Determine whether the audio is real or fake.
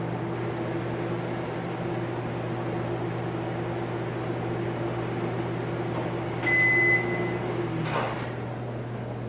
real